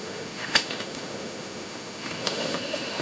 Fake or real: fake